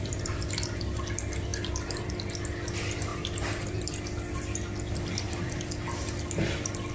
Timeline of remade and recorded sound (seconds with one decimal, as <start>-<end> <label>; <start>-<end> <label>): 0.0-1.5 recorded; 1.5-2.1 remade; 2.1-6.9 recorded

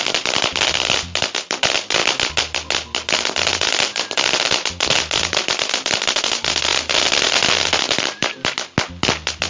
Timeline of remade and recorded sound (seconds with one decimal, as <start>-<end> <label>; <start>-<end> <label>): 0.0-9.5 recorded

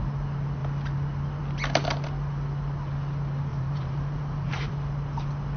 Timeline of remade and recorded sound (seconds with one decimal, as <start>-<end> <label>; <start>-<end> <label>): 0.0-3.5 recorded; 3.5-4.7 remade; 4.7-5.6 recorded